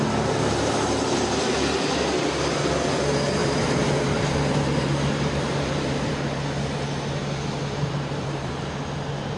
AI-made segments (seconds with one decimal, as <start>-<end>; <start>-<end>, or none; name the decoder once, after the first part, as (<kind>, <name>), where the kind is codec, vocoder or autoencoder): 3.4-6.2 (vocoder, BigVGAN v2); 7.6-8.5